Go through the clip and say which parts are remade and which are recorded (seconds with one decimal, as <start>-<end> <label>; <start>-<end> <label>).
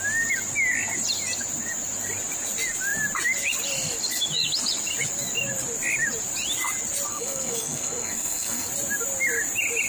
0.0-7.1 recorded; 7.1-8.7 remade; 8.7-9.9 recorded